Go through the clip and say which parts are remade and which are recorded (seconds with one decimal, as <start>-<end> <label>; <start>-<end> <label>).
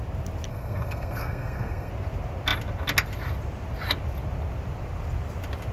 0.0-0.5 recorded; 0.5-1.9 remade; 1.9-5.7 recorded